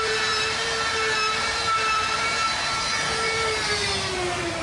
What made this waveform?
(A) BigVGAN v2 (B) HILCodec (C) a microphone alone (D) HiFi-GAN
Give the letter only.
A